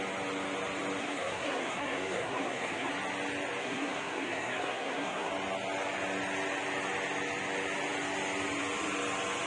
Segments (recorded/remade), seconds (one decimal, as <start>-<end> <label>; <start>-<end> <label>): 0.0-1.0 recorded; 1.0-2.9 remade; 2.9-3.6 recorded; 3.6-5.3 remade; 5.3-9.5 recorded